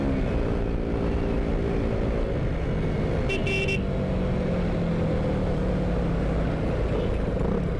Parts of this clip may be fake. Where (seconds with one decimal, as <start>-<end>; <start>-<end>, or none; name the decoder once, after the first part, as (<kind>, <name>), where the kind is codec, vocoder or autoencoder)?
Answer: none